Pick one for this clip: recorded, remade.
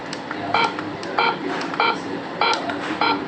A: remade